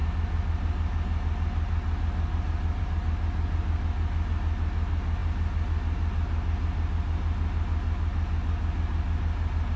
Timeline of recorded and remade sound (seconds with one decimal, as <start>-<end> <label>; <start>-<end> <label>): 0.0-9.8 recorded